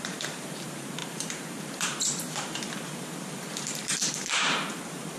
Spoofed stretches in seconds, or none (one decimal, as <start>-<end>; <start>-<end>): 0.0-5.2